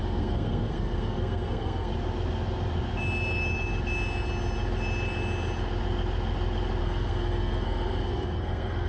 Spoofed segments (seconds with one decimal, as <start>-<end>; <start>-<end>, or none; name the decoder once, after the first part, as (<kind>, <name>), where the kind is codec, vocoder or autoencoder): 0.0-1.9 (codec, SNAC); 6.8-8.9